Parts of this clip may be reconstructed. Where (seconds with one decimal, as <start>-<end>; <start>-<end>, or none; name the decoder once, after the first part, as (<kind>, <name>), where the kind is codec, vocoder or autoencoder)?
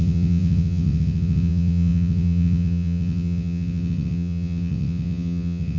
0.0-5.8 (vocoder, WaveNeXt)